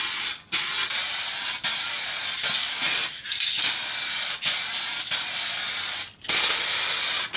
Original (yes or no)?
yes